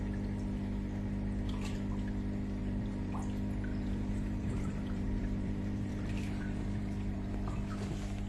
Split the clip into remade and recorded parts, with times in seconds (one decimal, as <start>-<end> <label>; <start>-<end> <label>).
0.0-2.6 recorded; 2.6-3.1 remade; 3.1-3.7 recorded; 3.7-7.3 remade; 7.3-8.3 recorded